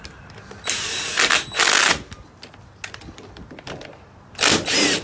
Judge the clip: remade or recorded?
recorded